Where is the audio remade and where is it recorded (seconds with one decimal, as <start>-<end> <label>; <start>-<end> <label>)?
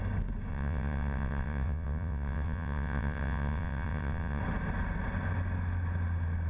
0.0-0.5 recorded; 0.5-4.4 remade; 4.4-6.5 recorded